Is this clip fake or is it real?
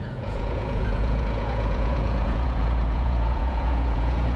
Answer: fake